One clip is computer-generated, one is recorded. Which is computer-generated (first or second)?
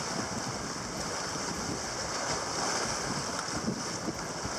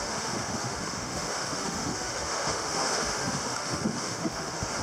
second